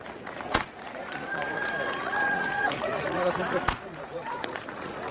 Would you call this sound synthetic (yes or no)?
yes